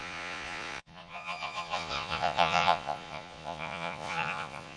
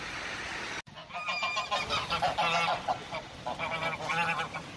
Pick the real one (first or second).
second